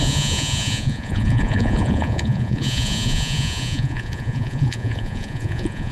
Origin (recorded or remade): remade